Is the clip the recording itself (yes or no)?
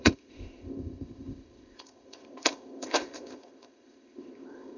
no